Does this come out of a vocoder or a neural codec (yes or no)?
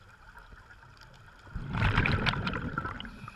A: yes